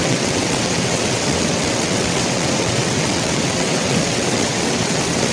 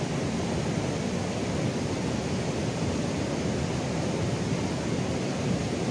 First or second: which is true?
second